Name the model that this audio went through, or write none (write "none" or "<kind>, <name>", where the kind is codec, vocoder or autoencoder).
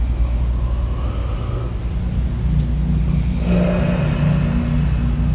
none